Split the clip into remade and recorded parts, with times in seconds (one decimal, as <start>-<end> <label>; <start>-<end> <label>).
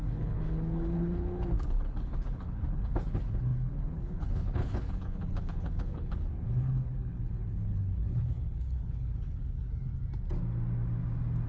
0.0-9.9 remade; 9.9-11.5 recorded